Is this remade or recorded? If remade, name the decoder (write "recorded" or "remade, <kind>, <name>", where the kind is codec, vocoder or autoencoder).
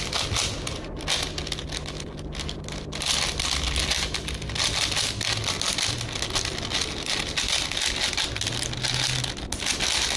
recorded